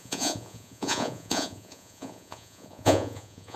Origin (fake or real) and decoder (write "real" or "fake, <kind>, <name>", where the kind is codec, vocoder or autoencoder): fake, vocoder, Vocos